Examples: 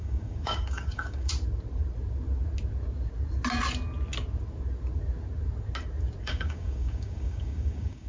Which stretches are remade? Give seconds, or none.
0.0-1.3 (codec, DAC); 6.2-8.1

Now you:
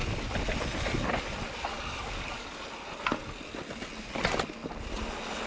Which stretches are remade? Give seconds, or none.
1.7-2.6 (codec, DAC)